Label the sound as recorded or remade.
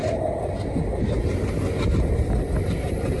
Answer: recorded